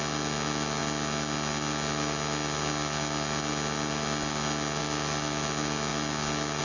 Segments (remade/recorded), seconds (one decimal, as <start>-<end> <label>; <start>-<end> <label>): 0.0-6.6 recorded